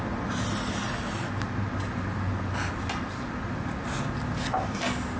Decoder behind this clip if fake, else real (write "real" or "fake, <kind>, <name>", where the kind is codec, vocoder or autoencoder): real